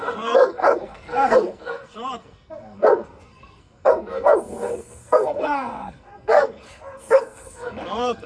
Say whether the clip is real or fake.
fake